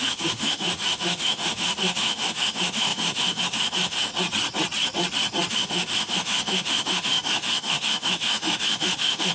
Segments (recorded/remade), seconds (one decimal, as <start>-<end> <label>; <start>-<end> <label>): 0.0-4.1 remade; 4.1-5.5 recorded; 5.5-9.3 remade